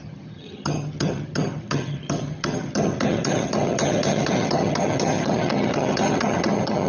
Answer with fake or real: fake